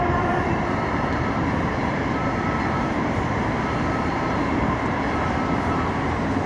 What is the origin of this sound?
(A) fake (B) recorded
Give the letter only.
A